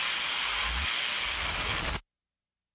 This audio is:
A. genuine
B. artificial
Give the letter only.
A